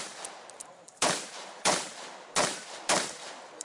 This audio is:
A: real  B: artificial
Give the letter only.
B